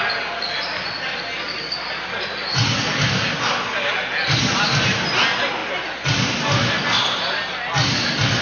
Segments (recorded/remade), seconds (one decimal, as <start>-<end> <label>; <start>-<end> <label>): 0.0-8.4 recorded